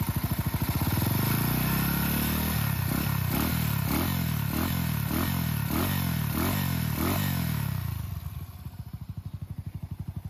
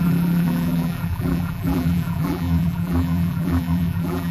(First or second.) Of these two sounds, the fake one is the second